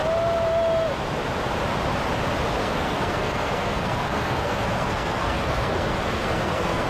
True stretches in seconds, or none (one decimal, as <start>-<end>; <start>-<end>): 0.0-2.6